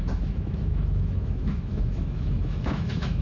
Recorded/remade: remade